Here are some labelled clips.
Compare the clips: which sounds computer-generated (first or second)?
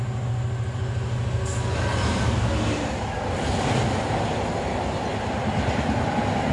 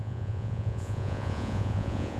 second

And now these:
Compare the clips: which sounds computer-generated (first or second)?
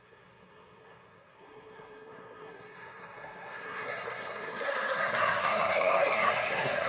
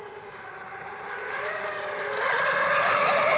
first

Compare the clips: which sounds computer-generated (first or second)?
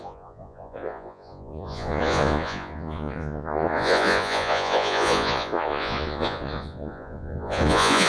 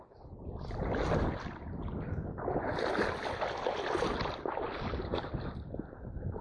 first